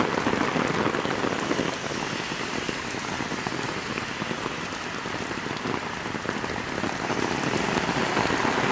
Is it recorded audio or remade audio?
recorded